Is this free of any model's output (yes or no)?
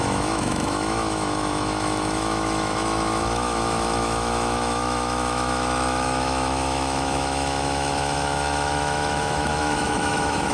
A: no